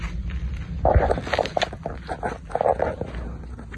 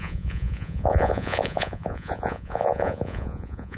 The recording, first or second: first